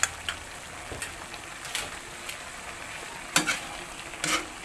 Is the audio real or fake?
real